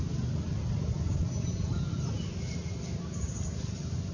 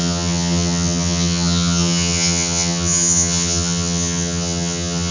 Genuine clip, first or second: first